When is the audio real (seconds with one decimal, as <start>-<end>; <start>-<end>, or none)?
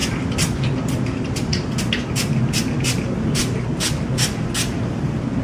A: 1.8-5.4